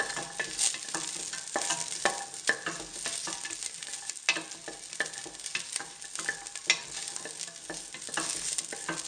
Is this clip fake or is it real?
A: real